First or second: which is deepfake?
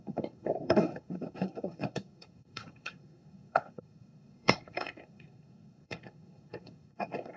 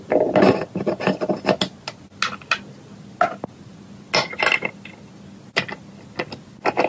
first